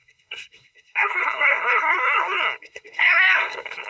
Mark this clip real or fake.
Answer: fake